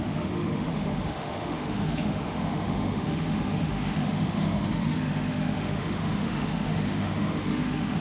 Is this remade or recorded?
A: remade